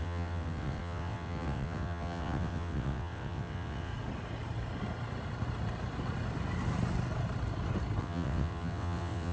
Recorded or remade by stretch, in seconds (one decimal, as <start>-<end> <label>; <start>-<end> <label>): 0.0-3.9 remade; 3.9-8.0 recorded; 8.0-9.3 remade